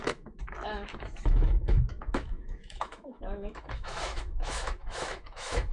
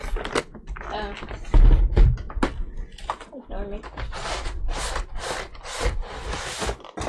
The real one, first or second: second